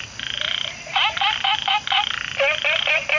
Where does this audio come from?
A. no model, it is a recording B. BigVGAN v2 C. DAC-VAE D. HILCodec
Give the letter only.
A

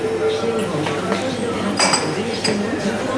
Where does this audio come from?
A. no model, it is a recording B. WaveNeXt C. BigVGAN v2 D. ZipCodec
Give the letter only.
A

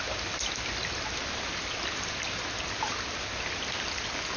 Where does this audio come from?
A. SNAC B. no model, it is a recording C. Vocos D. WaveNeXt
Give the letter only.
B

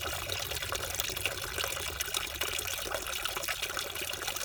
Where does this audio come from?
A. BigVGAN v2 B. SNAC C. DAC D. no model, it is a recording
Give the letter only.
D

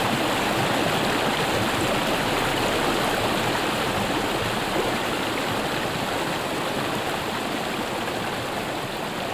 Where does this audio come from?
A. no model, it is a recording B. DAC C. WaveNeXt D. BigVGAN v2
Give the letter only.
A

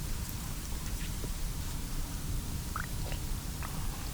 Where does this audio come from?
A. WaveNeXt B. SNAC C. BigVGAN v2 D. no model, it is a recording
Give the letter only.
C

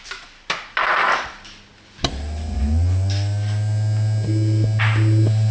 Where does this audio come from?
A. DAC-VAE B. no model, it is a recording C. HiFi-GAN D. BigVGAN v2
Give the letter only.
B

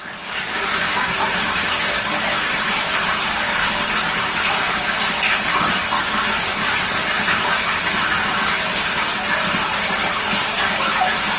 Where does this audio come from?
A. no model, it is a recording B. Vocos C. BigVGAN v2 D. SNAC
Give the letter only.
A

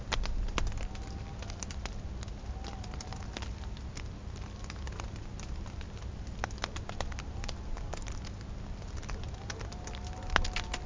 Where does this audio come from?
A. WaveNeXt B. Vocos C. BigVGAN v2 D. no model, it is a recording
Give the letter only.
D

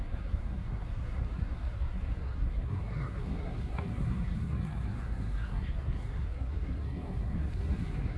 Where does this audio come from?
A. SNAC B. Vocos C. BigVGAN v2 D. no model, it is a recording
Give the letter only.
A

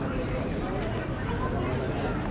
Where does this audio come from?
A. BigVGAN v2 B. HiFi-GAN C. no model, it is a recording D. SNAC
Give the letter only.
C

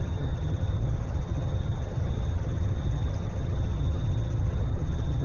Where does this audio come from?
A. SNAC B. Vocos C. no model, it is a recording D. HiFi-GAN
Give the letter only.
D